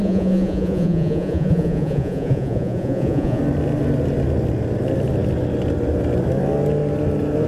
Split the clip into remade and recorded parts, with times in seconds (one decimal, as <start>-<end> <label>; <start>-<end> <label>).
0.0-3.4 remade; 3.4-7.5 recorded